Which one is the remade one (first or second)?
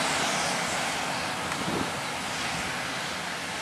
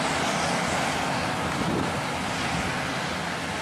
first